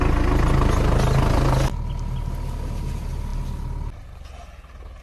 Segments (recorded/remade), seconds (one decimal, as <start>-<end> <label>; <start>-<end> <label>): 0.0-5.0 recorded